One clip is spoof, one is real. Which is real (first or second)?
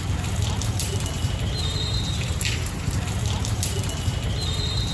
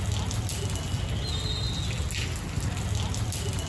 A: second